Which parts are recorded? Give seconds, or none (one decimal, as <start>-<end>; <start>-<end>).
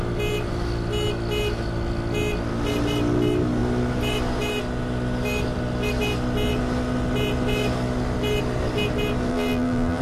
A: 0.0-9.3